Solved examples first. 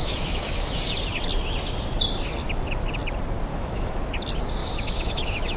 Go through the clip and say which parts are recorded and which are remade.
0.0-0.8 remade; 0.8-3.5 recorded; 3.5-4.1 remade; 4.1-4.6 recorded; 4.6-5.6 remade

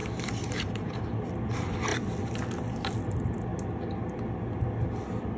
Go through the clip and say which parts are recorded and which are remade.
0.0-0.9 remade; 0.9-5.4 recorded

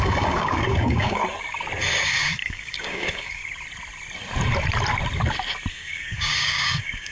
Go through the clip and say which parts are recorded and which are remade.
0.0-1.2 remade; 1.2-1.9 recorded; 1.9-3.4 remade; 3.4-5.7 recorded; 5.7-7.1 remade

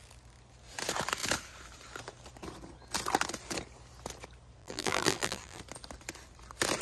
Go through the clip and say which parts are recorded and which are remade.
0.0-4.6 recorded; 4.6-5.6 remade; 5.6-6.8 recorded